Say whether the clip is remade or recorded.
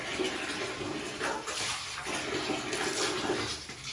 recorded